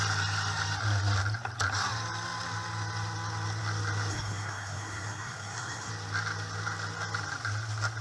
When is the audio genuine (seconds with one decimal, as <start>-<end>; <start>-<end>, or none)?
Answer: 0.0-4.1; 5.9-8.0